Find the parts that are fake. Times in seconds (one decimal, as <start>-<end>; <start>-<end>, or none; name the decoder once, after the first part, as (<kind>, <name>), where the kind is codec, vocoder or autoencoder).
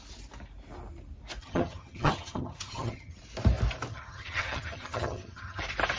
1.4-3.2 (vocoder, HiFi-GAN); 3.9-5.6